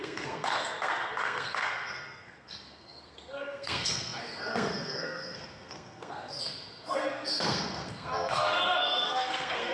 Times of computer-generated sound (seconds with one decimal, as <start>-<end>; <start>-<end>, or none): 0.0-9.7